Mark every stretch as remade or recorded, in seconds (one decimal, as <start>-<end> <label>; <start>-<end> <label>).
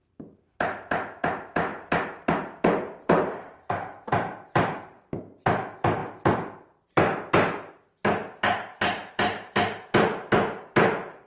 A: 0.0-1.7 recorded; 1.7-5.2 remade; 5.2-6.0 recorded; 6.0-7.3 remade; 7.3-9.0 recorded; 9.0-9.6 remade; 9.6-11.3 recorded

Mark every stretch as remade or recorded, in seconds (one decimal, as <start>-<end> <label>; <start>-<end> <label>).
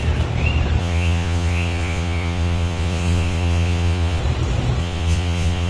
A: 0.0-0.8 recorded; 0.8-4.2 remade; 4.2-4.8 recorded; 4.8-5.7 remade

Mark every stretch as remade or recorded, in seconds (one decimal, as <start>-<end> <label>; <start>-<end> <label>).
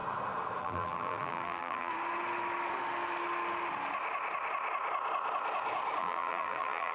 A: 0.0-0.6 recorded; 0.6-1.9 remade; 1.9-6.0 recorded; 6.0-6.9 remade